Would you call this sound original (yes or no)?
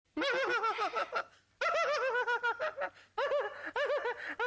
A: yes